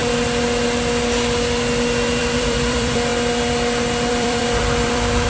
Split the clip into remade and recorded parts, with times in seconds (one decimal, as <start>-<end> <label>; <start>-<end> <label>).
0.0-2.2 recorded; 2.2-3.1 remade; 3.1-4.1 recorded; 4.1-5.3 remade

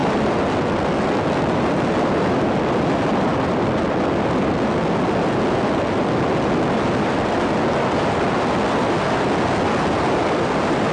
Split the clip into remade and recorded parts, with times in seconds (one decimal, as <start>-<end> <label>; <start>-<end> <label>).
0.0-10.9 recorded

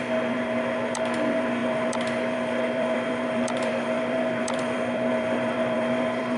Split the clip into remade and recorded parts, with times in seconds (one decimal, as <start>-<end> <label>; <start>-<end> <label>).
0.0-6.4 remade

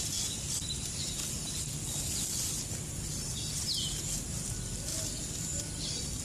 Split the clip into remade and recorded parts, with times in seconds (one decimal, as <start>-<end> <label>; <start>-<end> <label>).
0.0-4.9 recorded; 4.9-5.8 remade; 5.8-6.2 recorded